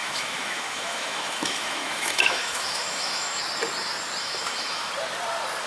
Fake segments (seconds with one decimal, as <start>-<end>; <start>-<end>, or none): 0.0-3.4; 4.2-4.9